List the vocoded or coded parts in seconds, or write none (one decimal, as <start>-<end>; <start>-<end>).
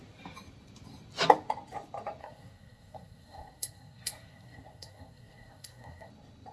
2.2-6.1